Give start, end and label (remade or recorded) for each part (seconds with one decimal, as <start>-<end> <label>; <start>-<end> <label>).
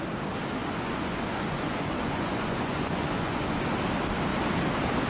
0.0-0.6 recorded; 0.6-3.6 remade; 3.6-5.1 recorded